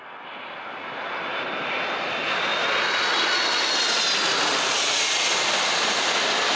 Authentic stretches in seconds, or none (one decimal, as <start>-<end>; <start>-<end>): 0.0-6.6